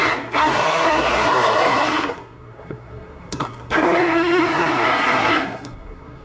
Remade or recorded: remade